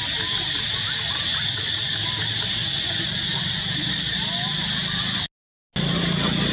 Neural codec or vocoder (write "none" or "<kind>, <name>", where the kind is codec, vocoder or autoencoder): none